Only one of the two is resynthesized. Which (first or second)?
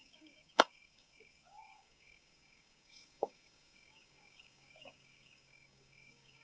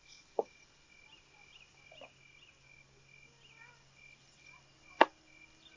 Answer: first